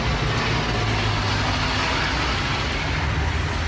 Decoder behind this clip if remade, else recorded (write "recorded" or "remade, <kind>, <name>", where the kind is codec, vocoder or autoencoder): recorded